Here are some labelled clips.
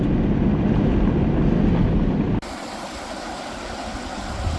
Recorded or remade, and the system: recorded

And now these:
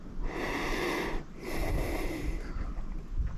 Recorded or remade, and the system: recorded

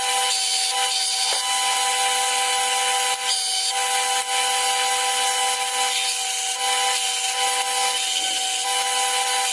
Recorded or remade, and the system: recorded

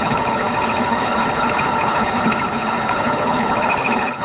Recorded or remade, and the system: remade, codec, HILCodec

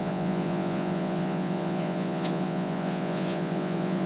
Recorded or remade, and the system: remade, vocoder, Vocos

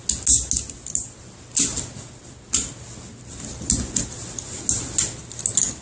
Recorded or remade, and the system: recorded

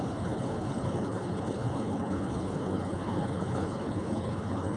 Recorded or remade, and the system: remade, codec, HILCodec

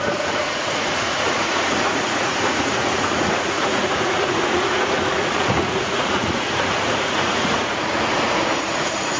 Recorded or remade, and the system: remade, vocoder, Vocos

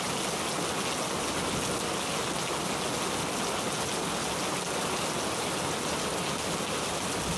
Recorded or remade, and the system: recorded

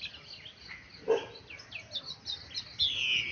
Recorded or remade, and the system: recorded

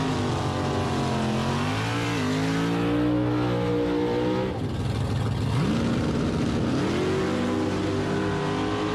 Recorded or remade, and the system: recorded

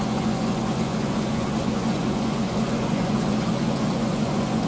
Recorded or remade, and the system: remade, vocoder, Vocos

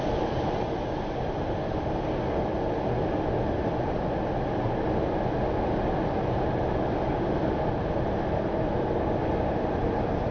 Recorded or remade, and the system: recorded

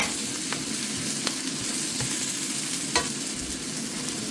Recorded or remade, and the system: recorded